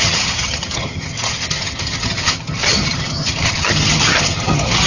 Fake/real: fake